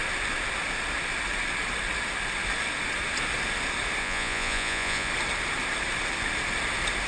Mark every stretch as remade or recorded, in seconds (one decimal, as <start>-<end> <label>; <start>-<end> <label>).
0.0-4.0 recorded; 4.0-5.1 remade; 5.1-7.1 recorded